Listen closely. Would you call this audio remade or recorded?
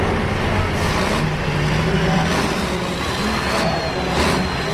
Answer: recorded